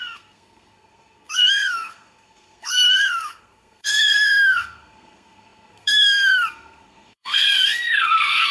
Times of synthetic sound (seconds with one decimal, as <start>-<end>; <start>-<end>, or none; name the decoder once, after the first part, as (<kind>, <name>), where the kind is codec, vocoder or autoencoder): 0.0-8.5 (codec, SNAC)